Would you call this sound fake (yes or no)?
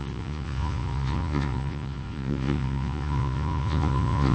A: yes